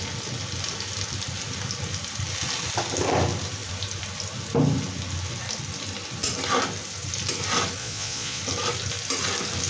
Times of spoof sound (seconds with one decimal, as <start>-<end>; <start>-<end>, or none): 7.8-8.4